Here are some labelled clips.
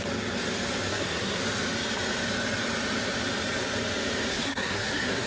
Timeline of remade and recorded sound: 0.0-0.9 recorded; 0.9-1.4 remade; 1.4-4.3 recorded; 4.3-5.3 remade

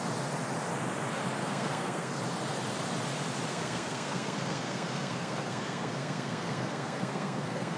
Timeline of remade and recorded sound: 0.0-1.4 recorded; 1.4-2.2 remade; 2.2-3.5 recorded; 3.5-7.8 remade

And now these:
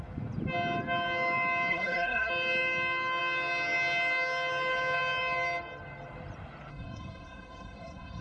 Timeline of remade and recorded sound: 0.0-1.7 recorded; 1.7-2.3 remade; 2.3-6.7 recorded; 6.7-8.2 remade